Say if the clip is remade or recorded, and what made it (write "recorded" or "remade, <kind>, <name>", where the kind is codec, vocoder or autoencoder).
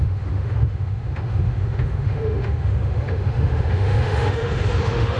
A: remade, autoencoder, DAC-VAE